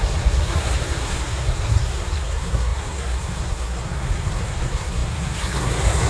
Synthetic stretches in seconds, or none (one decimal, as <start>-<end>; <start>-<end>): 0.0-6.1

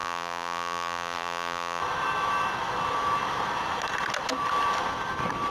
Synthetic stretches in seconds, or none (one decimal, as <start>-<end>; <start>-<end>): 0.0-1.8

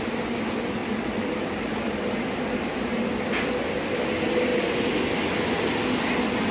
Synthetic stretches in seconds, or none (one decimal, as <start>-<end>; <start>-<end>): none

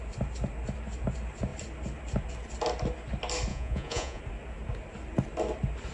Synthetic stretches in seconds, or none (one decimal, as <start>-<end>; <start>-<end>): 3.5-4.2